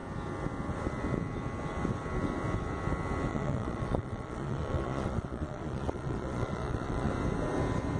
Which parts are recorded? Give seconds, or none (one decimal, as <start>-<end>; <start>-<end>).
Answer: 0.0-3.3; 7.1-8.0